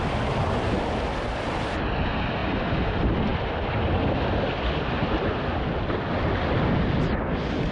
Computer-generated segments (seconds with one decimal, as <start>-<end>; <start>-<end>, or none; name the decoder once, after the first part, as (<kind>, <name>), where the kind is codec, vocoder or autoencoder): none

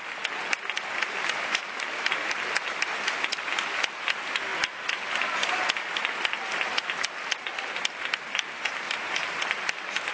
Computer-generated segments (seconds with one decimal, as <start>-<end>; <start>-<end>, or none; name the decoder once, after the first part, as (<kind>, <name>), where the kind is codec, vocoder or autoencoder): none